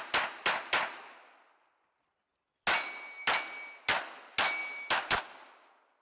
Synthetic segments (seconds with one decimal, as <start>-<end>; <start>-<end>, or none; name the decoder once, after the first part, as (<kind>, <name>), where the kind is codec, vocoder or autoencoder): none